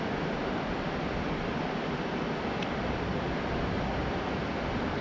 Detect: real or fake real